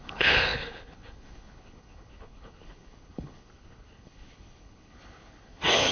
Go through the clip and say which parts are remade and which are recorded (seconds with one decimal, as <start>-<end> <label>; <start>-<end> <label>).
0.0-5.9 remade